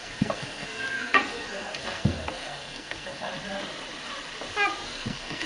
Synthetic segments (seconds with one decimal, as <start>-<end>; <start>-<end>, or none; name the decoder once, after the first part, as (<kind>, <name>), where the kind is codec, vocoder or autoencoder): 0.0-3.3 (codec, SNAC); 4.8-5.5